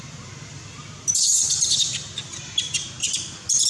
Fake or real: fake